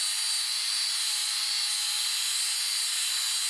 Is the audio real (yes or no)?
yes